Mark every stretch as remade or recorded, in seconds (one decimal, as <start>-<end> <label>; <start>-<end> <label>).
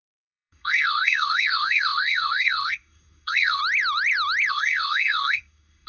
0.0-3.6 remade; 3.6-4.5 recorded; 4.5-5.9 remade